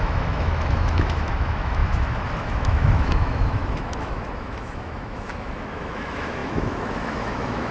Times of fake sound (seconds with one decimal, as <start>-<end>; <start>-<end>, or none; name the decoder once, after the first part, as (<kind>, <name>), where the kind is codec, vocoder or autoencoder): 0.0-7.7 (autoencoder, DAC-VAE)